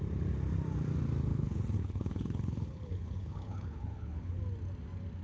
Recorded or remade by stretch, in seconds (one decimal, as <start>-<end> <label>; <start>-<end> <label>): 0.0-1.3 recorded; 1.3-4.4 remade; 4.4-5.2 recorded